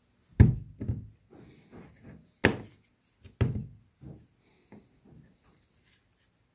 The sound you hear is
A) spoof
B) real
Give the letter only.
B